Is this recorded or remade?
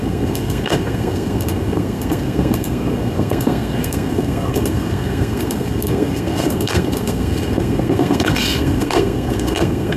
remade